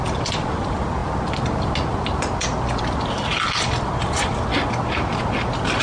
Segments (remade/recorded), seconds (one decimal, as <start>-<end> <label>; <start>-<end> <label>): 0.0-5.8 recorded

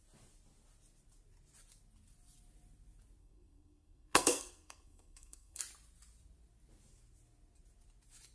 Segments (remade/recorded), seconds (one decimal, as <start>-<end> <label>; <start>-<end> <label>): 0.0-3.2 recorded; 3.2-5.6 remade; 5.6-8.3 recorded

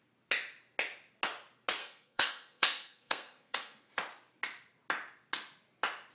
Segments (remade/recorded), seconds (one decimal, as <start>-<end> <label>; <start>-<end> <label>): 0.0-1.8 recorded; 1.8-3.9 remade; 3.9-6.1 recorded